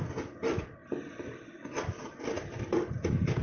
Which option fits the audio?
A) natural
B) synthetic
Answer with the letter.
A